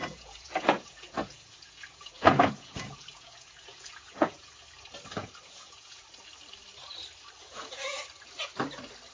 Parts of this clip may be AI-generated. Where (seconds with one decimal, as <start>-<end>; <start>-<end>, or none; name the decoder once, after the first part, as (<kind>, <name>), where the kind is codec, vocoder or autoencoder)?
0.0-4.5 (vocoder, Vocos); 5.2-6.1; 7.4-8.0